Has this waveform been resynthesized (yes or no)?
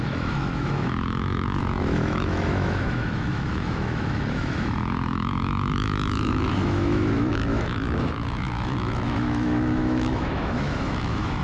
yes